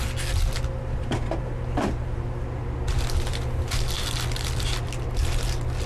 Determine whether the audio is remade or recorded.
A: recorded